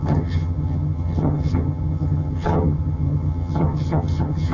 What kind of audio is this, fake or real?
fake